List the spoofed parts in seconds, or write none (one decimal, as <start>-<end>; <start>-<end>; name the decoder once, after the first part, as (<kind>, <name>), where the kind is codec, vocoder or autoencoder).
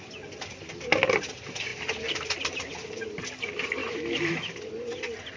3.8-4.5 (autoencoder, DAC-VAE)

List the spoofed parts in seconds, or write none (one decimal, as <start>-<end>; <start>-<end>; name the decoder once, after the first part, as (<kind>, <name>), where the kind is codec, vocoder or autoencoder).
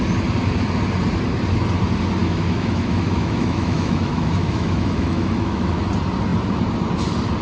2.2-5.8 (autoencoder, DAC-VAE)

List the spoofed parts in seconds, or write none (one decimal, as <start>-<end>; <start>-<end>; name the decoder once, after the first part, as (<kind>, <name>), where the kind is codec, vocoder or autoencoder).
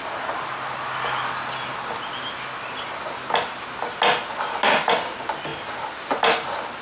none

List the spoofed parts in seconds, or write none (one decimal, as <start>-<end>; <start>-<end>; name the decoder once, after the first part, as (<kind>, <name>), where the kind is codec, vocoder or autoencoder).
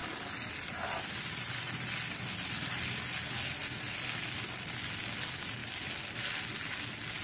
none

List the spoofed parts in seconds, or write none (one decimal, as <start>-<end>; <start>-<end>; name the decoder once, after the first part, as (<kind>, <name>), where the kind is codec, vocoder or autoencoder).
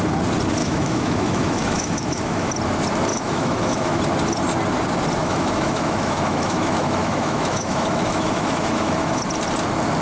0.6-2.5 (autoencoder, DAC-VAE); 3.1-4.0; 5.2-9.2